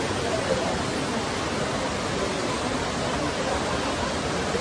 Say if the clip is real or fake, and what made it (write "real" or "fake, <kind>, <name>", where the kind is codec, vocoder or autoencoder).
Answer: real